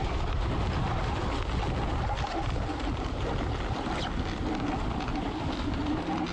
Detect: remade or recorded recorded